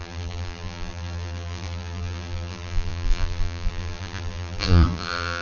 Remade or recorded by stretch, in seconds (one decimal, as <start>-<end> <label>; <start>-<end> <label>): 0.0-5.4 remade